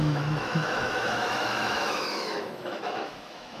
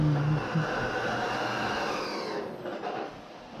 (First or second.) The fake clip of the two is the first